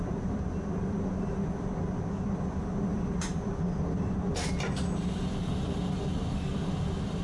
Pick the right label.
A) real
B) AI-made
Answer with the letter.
B